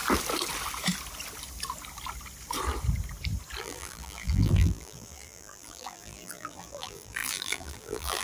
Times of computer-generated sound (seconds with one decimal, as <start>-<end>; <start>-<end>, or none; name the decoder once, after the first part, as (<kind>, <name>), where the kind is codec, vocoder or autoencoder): 3.6-8.2 (vocoder, BigVGAN v2)